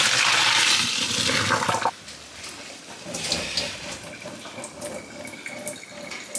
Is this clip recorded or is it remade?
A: recorded